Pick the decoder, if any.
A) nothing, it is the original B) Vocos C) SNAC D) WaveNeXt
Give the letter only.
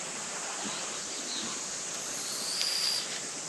A